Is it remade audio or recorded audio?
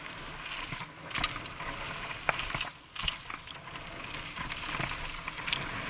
recorded